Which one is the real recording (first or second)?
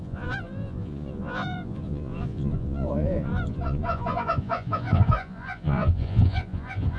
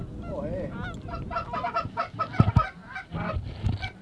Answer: second